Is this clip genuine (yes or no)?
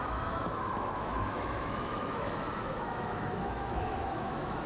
no